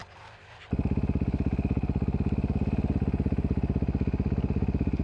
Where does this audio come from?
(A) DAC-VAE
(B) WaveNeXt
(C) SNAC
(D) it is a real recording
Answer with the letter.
D